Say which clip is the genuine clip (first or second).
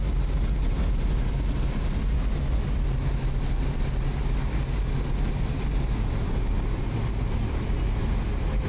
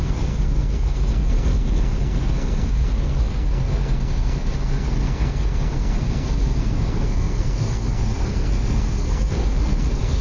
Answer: first